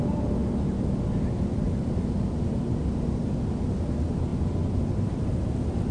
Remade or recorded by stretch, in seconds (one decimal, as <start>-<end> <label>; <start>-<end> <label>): 0.0-5.9 recorded